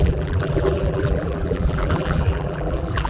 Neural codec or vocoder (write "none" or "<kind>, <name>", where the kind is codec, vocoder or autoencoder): vocoder, BigVGAN v2